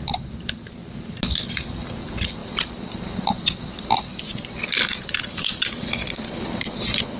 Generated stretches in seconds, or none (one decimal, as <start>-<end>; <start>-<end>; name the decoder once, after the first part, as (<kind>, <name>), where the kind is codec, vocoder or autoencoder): 0.0-0.8 (vocoder, BigVGAN v2); 1.9-2.4; 5.2-7.2